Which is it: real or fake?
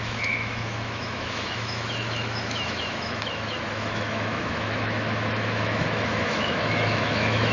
fake